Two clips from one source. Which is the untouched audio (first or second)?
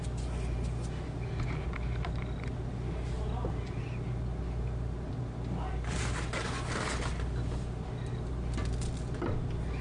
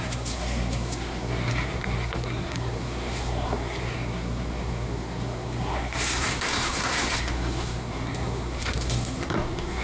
first